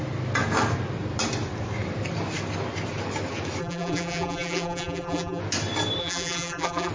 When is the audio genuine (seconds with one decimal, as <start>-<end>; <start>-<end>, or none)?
0.0-3.6; 5.4-6.0